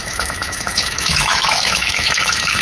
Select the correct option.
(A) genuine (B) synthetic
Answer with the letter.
B